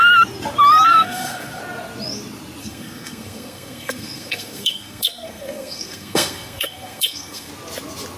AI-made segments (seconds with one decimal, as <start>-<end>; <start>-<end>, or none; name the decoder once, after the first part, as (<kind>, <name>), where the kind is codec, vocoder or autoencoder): 0.9-1.6 (codec, SNAC); 2.6-7.5